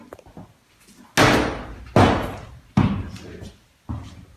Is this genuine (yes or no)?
yes